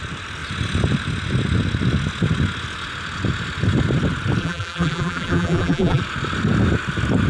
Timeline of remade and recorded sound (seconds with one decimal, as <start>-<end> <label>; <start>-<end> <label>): 0.0-4.4 recorded; 4.4-6.0 remade; 6.0-7.3 recorded